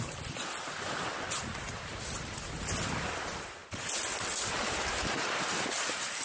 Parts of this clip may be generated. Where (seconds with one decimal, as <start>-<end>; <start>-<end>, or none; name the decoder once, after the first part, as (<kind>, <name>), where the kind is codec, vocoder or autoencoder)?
none